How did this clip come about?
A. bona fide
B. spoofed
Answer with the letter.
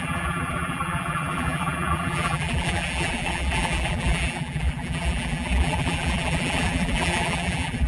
B